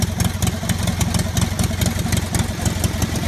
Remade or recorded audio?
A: recorded